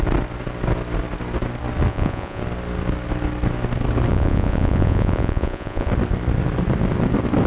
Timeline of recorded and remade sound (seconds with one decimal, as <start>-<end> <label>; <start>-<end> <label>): 0.0-1.9 recorded; 1.9-2.4 remade; 2.4-4.1 recorded; 4.1-5.9 remade; 5.9-7.5 recorded